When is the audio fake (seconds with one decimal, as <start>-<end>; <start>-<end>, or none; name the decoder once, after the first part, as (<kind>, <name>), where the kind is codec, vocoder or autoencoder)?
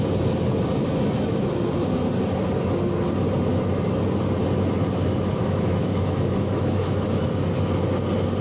5.4-7.2 (autoencoder, DAC-VAE)